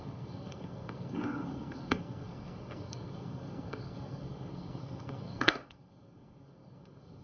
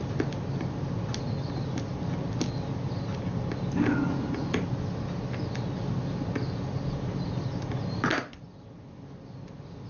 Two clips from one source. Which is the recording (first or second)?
second